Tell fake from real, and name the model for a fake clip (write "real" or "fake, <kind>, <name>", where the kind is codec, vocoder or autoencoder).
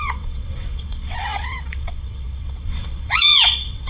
fake, vocoder, WaveNeXt